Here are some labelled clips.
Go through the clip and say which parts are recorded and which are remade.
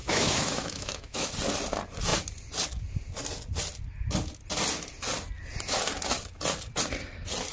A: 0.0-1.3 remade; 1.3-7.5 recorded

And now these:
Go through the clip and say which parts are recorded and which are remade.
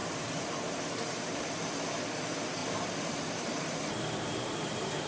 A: 0.0-1.7 remade; 1.7-2.6 recorded; 2.6-5.1 remade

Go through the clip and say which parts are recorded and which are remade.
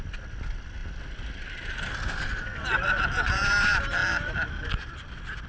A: 0.0-5.5 recorded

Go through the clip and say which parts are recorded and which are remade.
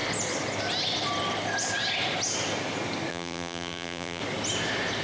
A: 0.0-3.1 recorded; 3.1-4.2 remade; 4.2-5.0 recorded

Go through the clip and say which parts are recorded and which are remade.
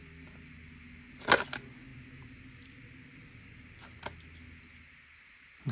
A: 0.0-5.7 recorded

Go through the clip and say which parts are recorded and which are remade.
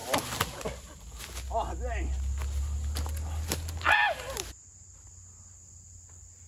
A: 0.0-6.5 recorded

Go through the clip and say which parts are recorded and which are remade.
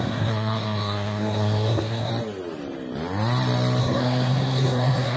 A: 0.0-2.1 remade; 2.1-3.8 recorded; 3.8-5.2 remade